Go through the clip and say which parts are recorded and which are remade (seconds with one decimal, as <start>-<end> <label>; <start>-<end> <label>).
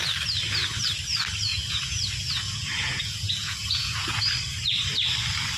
0.0-1.5 recorded; 1.5-4.2 remade; 4.2-5.6 recorded